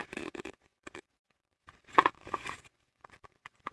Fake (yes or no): yes